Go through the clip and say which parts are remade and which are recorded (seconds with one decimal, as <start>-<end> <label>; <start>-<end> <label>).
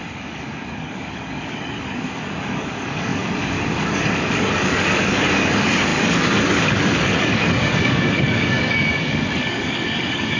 0.0-10.4 remade